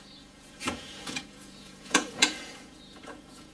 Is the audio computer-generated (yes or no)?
yes